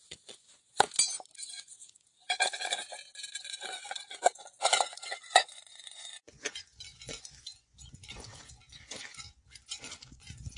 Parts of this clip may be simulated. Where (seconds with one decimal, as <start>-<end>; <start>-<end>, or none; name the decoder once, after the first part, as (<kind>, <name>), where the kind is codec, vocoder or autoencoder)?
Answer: 0.0-0.9 (vocoder, Vocos); 1.5-2.8; 3.4-10.6